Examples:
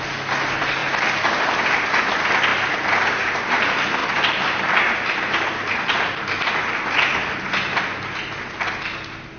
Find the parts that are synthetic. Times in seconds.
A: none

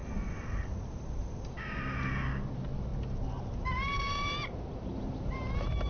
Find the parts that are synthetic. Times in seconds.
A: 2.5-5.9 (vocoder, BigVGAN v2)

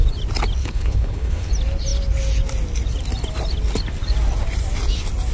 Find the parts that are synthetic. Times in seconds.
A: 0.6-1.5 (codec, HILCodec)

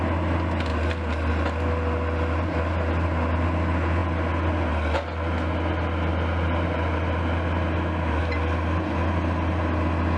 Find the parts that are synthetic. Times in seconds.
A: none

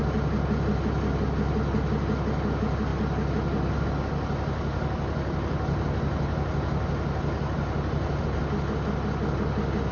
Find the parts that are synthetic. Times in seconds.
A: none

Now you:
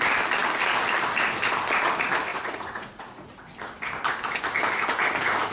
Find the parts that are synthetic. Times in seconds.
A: 2.3-3.5 (vocoder, Vocos)